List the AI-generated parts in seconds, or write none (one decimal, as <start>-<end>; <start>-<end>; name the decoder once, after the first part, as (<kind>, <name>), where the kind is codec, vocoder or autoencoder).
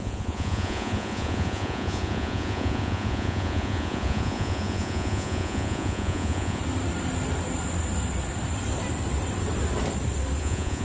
0.0-6.6 (vocoder, Vocos); 10.4-10.8